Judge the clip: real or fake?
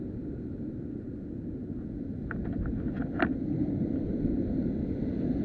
real